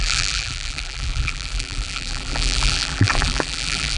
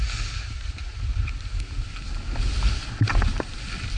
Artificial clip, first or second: first